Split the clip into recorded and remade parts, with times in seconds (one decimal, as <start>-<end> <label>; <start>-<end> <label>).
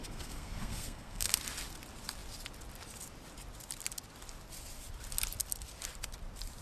0.0-1.3 remade; 1.3-6.6 recorded